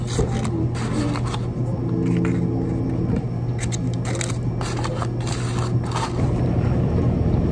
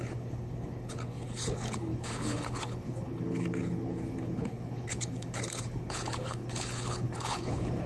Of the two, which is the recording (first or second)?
first